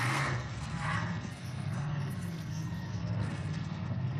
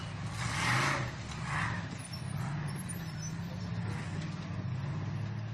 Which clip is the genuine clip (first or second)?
second